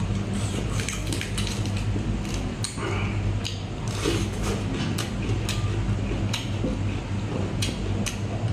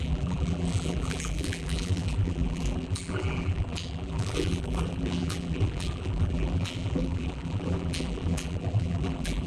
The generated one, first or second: second